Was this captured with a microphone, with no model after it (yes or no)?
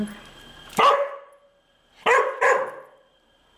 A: yes